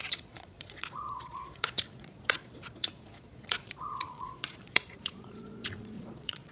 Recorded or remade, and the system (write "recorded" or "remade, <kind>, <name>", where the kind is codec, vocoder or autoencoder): remade, vocoder, Vocos